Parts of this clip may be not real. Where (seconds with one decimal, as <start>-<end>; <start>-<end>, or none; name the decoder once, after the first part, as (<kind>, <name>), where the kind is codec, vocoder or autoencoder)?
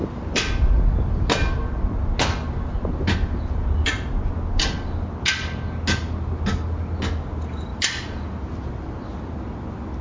7.7-10.0 (vocoder, BigVGAN v2)